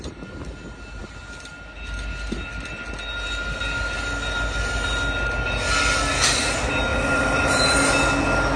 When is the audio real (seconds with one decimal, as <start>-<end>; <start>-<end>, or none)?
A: 0.0-6.9; 7.9-8.6